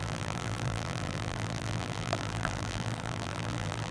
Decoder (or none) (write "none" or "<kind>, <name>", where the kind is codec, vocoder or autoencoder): vocoder, BigVGAN v2